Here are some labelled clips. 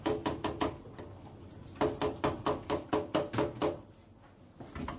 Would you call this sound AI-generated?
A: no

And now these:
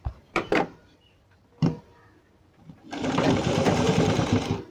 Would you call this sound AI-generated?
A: yes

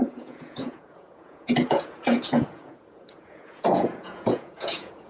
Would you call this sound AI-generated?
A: yes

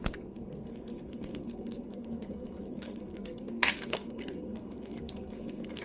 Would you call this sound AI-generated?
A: yes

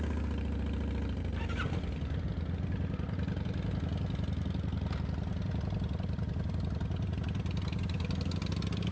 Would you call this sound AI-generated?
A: no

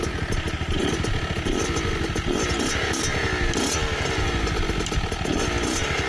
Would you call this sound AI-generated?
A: no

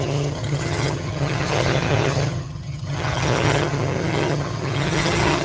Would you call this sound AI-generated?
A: yes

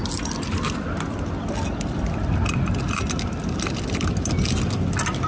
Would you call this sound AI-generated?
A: no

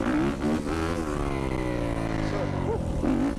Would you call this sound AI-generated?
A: no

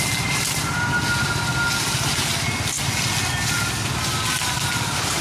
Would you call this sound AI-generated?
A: no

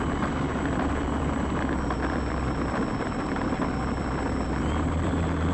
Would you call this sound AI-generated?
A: yes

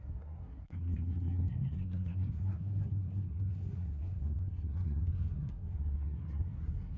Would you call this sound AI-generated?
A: yes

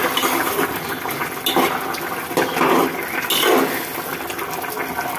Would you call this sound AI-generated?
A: no